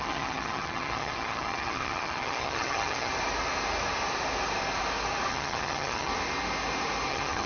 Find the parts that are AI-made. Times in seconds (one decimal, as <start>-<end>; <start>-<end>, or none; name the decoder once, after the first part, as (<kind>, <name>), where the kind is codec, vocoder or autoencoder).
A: 0.0-3.1 (vocoder, HiFi-GAN); 5.3-6.1; 7.1-7.5